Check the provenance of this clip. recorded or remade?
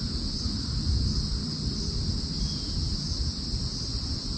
recorded